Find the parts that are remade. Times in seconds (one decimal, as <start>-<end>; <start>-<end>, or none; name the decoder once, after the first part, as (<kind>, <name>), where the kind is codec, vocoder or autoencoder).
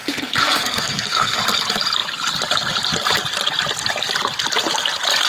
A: 0.0-1.4 (codec, SNAC)